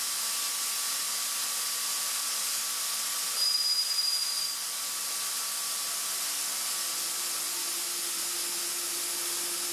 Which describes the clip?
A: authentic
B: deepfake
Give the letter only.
A